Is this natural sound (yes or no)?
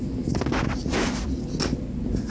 yes